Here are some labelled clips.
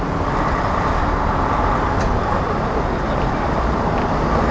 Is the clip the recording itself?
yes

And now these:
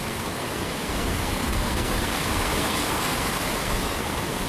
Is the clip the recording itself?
no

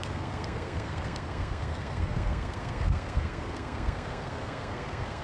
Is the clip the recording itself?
no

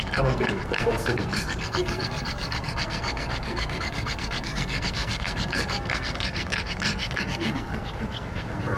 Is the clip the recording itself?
no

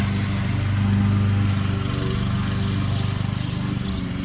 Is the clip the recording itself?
yes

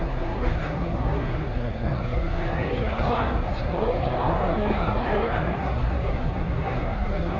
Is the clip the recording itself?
no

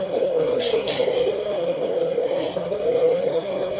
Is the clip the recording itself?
no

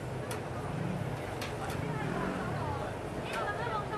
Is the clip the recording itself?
yes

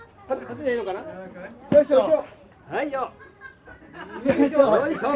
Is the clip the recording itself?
yes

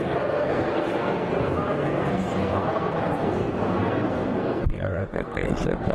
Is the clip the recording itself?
no